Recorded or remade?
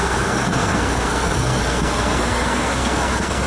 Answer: remade